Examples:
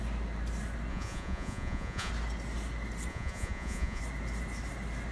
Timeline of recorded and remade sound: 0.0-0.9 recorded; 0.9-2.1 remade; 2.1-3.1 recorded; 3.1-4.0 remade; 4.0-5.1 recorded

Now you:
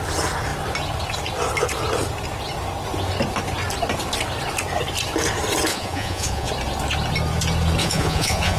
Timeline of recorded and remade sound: 0.0-5.7 recorded; 5.7-6.5 remade; 6.5-7.8 recorded; 7.8-8.6 remade

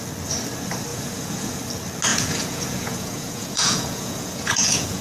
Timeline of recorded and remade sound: 0.0-0.9 recorded; 0.9-1.6 remade; 1.6-2.1 recorded; 2.1-5.0 remade

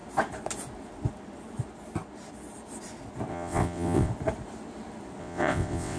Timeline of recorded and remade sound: 0.0-3.3 recorded; 3.3-4.1 remade; 4.1-5.2 recorded; 5.2-6.0 remade